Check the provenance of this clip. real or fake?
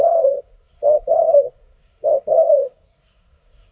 fake